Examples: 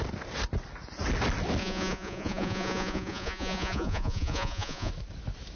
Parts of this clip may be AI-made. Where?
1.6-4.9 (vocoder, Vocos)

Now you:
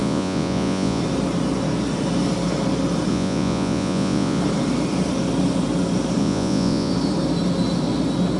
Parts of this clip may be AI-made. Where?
0.0-1.0 (vocoder, Vocos); 3.1-4.4; 6.2-6.9

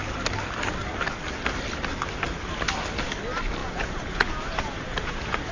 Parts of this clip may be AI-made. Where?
3.6-5.5 (vocoder, Vocos)